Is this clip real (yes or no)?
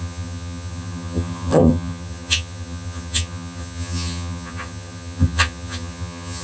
no